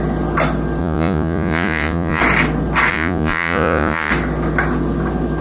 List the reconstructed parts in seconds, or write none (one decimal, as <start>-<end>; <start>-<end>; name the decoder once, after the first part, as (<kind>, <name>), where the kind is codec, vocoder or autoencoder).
0.8-2.2 (vocoder, Vocos); 2.9-4.1